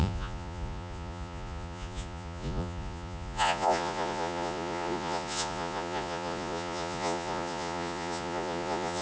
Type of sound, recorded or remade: remade